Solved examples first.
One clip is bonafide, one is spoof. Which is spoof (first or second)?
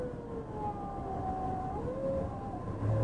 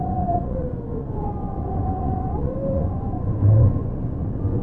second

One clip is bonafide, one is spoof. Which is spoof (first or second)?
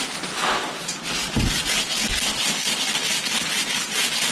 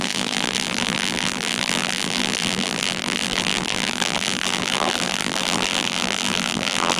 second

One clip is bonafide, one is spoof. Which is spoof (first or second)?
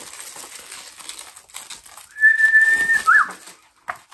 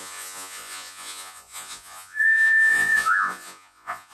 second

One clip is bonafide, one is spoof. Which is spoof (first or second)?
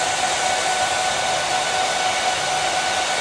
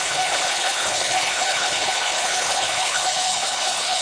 second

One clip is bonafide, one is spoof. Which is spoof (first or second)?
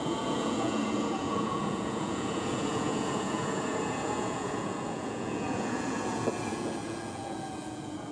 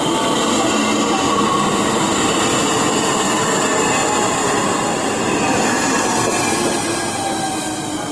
first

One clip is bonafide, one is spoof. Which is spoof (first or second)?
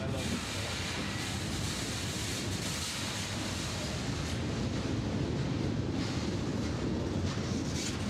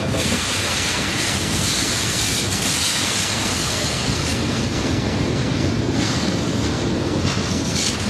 second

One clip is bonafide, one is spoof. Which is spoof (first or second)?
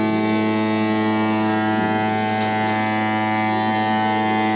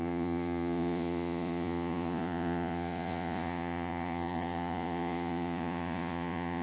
second